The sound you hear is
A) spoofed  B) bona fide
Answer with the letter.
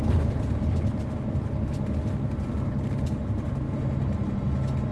B